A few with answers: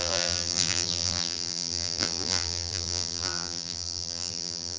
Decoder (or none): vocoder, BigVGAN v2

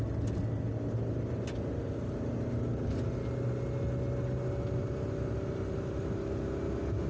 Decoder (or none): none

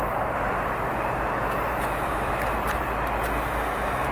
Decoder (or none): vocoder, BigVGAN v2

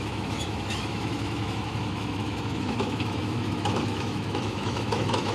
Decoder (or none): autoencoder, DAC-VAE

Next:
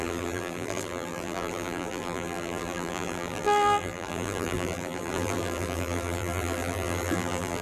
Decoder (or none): vocoder, BigVGAN v2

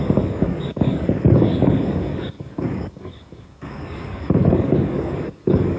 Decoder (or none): codec, DAC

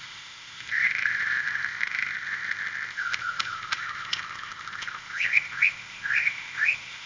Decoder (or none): codec, ZipCodec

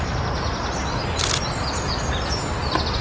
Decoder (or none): none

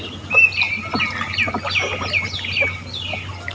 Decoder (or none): none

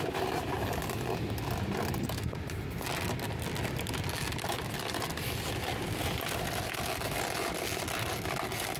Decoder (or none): none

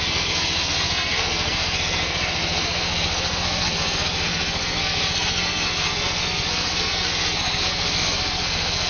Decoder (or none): codec, SNAC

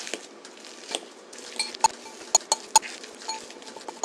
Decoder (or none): none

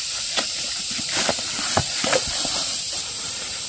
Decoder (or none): vocoder, BigVGAN v2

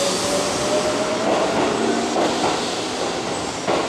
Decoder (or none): none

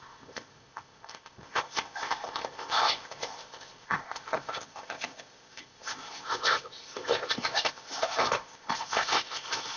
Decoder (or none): codec, ZipCodec